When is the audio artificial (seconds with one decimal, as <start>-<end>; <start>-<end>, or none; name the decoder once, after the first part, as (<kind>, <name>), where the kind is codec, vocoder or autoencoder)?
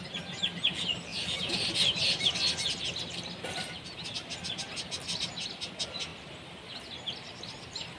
1.1-2.3 (vocoder, BigVGAN v2)